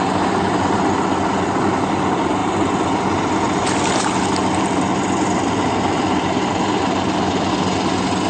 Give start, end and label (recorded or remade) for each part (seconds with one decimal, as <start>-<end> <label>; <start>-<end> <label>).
0.0-8.3 recorded